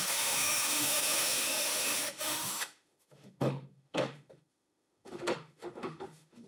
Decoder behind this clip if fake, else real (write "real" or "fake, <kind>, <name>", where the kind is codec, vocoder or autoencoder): fake, autoencoder, DAC-VAE